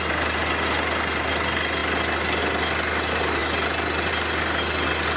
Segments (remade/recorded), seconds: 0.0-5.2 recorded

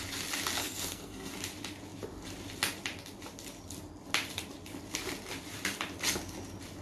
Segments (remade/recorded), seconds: 0.0-0.6 recorded; 0.6-1.3 remade; 1.3-6.8 recorded

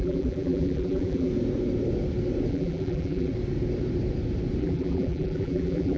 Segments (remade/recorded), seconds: 0.0-1.3 remade; 1.3-2.5 recorded; 2.5-3.3 remade; 3.3-4.6 recorded; 4.6-6.0 remade

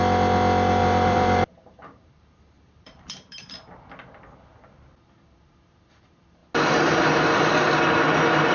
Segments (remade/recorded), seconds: 0.0-0.8 recorded; 0.8-3.9 remade; 3.9-8.5 recorded

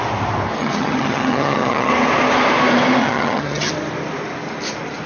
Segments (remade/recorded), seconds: 0.0-0.6 recorded; 0.6-1.9 remade; 1.9-3.0 recorded; 3.0-3.7 remade; 3.7-5.1 recorded

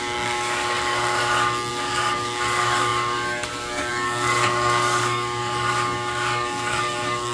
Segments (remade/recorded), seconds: 0.0-1.2 remade; 1.2-1.7 recorded; 1.7-7.3 remade

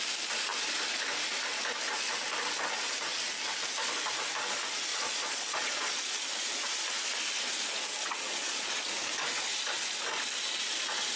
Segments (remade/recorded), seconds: 0.0-4.9 recorded; 4.9-6.1 remade; 6.1-8.0 recorded; 8.0-8.8 remade; 8.8-11.2 recorded